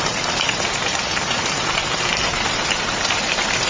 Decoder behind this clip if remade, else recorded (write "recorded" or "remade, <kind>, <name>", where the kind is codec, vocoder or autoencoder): remade, vocoder, BigVGAN v2